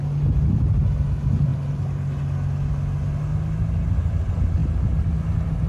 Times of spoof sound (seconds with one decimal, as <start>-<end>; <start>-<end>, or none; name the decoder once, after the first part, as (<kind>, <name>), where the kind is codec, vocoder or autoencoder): 4.6-5.1 (vocoder, BigVGAN v2)